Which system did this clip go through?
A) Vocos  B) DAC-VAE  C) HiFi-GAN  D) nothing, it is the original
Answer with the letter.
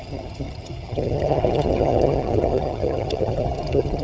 C